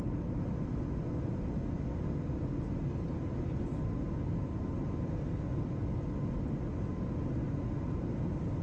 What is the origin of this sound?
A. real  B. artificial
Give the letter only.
A